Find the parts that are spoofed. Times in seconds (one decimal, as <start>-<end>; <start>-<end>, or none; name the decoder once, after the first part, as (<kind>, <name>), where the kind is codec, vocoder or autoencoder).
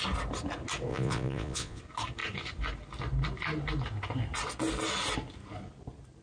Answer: 0.9-1.8 (vocoder, Vocos)